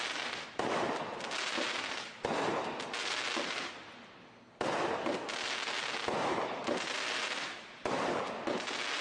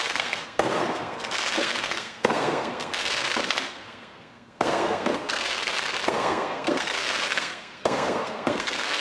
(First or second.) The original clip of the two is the first